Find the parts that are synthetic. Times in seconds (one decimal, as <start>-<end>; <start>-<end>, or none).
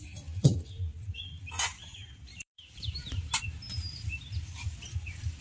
0.9-4.1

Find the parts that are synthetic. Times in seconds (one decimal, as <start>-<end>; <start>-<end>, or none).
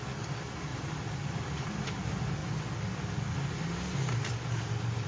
0.7-1.7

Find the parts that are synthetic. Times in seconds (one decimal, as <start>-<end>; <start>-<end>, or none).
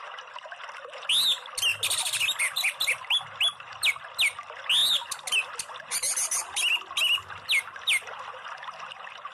none